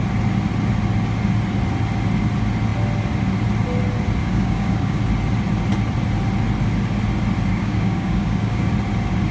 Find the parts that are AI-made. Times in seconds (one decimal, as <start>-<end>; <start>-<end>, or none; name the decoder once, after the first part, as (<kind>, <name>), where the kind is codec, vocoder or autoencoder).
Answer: 4.2-5.0 (codec, DAC); 7.5-8.7